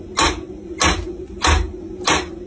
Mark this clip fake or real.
real